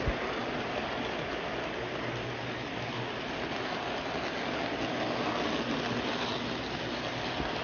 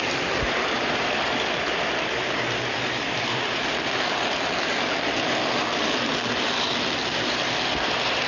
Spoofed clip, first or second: second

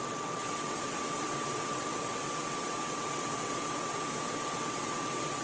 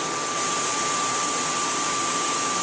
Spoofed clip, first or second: first